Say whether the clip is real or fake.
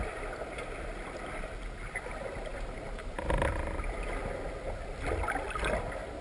real